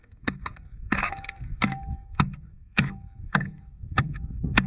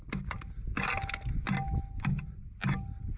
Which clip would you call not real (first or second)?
first